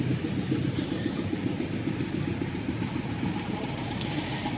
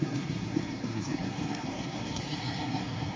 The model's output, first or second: second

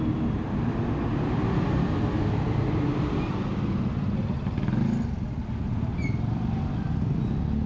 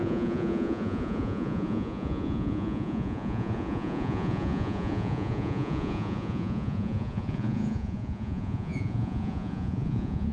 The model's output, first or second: second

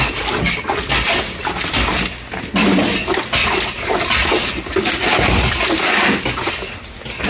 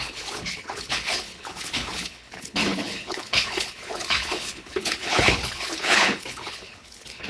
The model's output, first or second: second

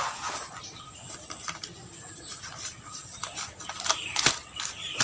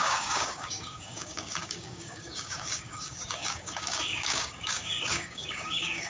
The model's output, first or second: second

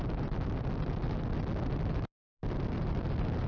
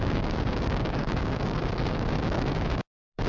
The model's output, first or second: second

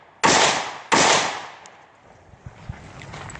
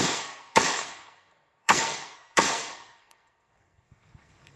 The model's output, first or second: second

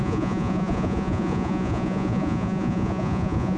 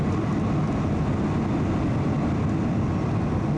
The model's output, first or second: first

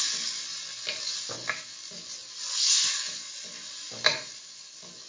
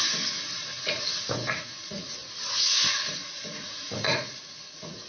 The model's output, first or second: second